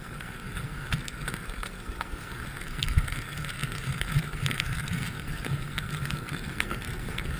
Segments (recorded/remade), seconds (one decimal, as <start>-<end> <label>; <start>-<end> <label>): 0.0-7.4 remade